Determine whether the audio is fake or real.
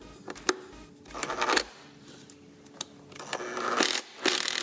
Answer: real